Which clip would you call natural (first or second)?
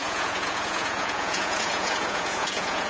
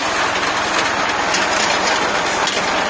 second